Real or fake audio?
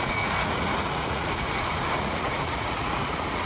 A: fake